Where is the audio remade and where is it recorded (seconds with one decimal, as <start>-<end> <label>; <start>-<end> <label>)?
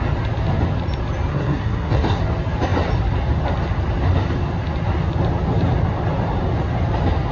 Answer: 0.0-1.3 recorded; 1.3-2.2 remade; 2.2-7.3 recorded